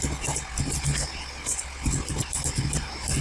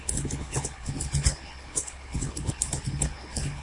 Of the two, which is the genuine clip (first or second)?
first